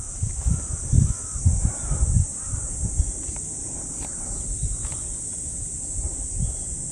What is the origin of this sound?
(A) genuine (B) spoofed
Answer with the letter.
A